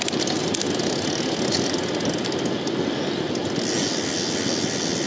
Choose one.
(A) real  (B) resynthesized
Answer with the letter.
A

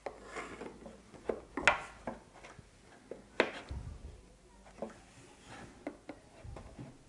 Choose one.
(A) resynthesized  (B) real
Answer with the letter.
B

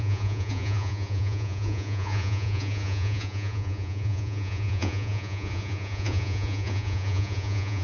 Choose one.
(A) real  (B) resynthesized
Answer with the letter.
B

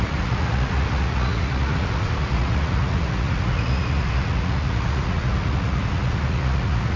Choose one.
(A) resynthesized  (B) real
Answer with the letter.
A